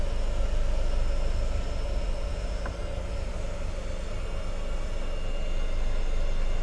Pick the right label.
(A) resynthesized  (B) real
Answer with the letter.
B